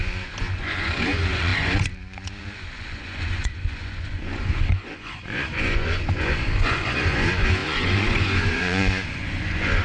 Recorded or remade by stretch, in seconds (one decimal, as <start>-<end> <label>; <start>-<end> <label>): 0.0-9.8 remade